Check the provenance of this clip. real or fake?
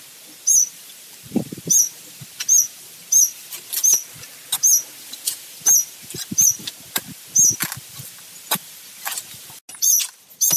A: real